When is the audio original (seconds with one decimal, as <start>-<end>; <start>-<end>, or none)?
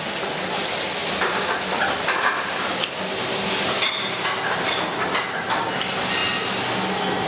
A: 0.0-7.3